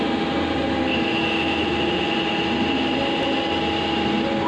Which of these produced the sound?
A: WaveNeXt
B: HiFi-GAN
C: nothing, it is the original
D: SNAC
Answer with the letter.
C